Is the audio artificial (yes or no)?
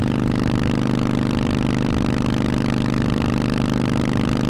no